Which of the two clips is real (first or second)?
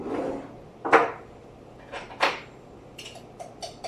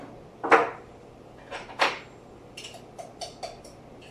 second